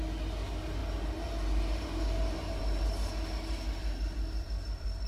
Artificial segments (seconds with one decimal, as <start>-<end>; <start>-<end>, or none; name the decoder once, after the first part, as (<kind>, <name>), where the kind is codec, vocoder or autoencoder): 3.8-5.1 (vocoder, BigVGAN v2)

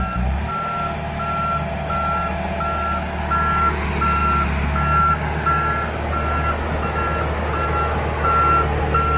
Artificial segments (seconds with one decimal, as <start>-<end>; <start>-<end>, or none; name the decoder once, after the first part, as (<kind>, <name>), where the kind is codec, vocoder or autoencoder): none

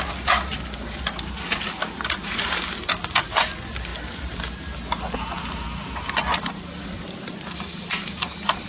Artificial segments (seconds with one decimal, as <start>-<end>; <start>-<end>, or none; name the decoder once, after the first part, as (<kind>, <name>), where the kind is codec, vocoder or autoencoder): none